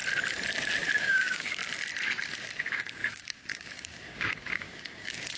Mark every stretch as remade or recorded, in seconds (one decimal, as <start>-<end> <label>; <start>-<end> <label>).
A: 0.0-1.0 recorded; 1.0-1.6 remade; 1.6-2.6 recorded; 2.6-5.4 remade